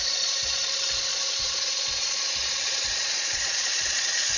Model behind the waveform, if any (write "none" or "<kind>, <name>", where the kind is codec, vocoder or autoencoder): vocoder, Vocos